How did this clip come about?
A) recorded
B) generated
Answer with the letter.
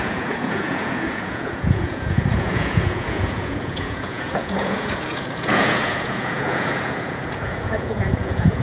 B